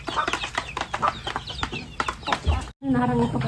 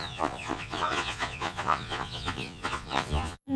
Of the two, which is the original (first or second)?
first